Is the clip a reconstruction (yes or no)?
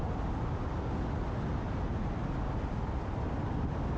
no